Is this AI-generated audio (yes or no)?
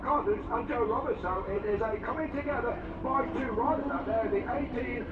yes